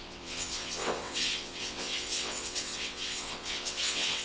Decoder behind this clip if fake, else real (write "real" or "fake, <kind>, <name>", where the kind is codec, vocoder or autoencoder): fake, vocoder, WaveNeXt